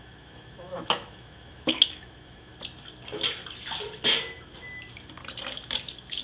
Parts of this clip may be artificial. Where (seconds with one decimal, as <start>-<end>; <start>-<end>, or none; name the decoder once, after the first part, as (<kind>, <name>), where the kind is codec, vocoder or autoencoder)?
0.0-2.5 (autoencoder, DAC-VAE)